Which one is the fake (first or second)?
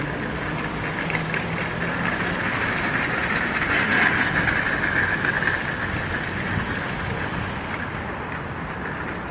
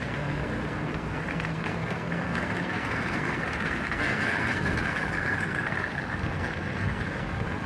second